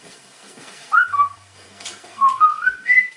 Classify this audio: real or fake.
fake